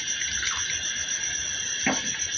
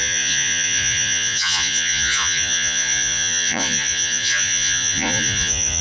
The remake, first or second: second